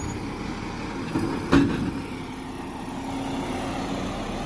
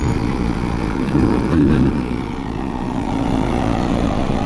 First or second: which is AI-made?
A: second